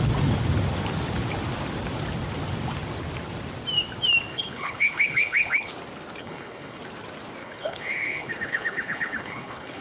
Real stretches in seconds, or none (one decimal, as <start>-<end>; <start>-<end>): 0.0-4.3; 5.7-6.2; 6.8-7.4